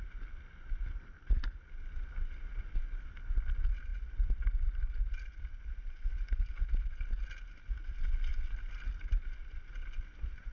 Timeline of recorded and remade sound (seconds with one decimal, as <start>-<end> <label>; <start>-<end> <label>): 0.0-10.0 recorded; 10.0-10.5 remade